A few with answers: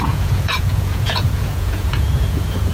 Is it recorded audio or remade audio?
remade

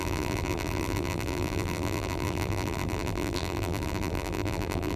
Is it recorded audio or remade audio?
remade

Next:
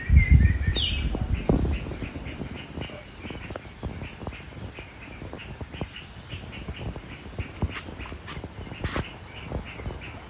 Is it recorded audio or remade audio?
recorded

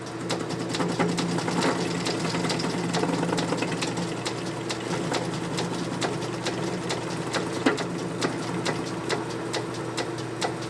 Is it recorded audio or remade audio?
recorded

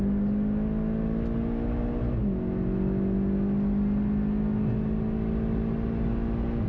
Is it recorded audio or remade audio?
recorded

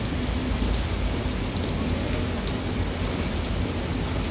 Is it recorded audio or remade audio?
recorded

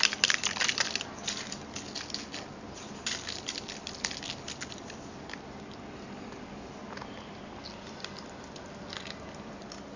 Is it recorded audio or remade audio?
recorded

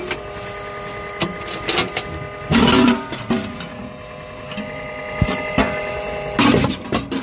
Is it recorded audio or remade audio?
recorded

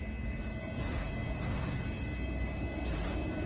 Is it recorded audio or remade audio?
recorded